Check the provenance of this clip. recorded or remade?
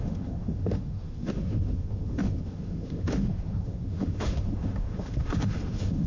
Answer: remade